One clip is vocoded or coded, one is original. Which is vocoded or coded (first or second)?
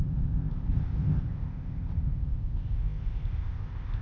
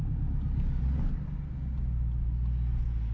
first